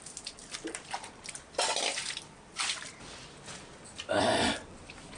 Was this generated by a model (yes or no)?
yes